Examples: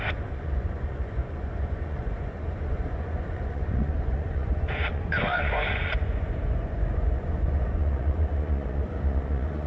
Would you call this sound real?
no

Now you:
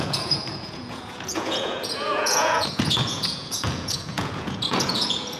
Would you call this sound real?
no